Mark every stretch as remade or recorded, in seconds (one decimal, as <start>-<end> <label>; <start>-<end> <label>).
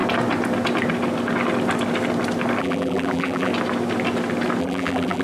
0.0-2.6 recorded; 2.6-3.5 remade; 3.5-4.6 recorded; 4.6-5.2 remade